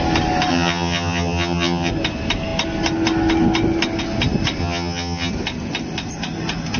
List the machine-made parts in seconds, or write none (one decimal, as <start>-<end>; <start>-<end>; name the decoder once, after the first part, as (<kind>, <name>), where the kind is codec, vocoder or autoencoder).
0.5-1.9 (vocoder, HiFi-GAN); 4.6-5.3